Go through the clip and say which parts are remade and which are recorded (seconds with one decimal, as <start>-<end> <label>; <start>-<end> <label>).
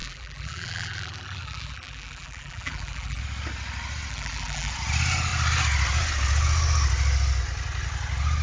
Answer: 0.0-3.2 remade; 3.2-4.1 recorded; 4.1-4.7 remade; 4.7-8.4 recorded